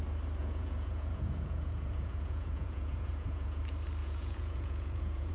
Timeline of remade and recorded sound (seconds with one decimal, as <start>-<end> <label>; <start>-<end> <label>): 0.0-0.4 recorded; 0.4-3.6 remade; 3.6-4.0 recorded; 4.0-5.3 remade